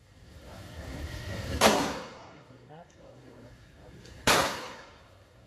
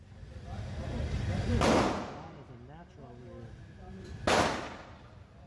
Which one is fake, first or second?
first